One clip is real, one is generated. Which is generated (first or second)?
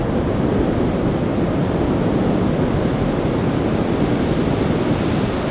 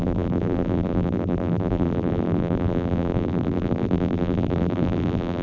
second